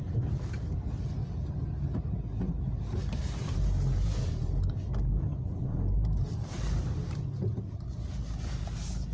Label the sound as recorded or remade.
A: recorded